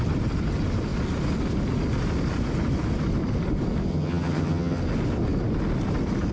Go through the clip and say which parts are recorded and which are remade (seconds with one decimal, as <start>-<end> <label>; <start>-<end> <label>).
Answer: 0.0-3.9 recorded; 3.9-4.8 remade; 4.8-6.3 recorded